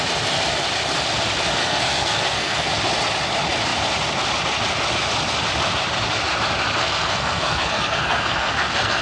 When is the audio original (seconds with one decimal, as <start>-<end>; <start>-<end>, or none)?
0.0-1.6; 2.7-6.8